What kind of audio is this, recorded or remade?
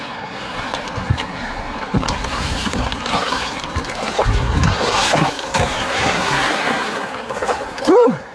remade